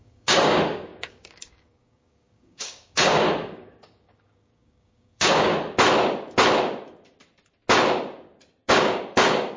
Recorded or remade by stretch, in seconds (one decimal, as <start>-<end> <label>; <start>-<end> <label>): 0.0-5.5 remade; 5.5-8.7 recorded; 8.7-9.6 remade